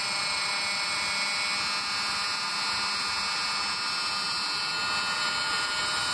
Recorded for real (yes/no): yes